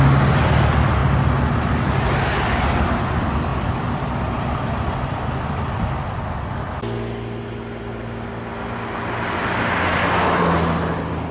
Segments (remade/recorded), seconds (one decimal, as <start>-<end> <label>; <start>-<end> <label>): 0.0-3.5 recorded; 3.5-5.8 remade; 5.8-11.3 recorded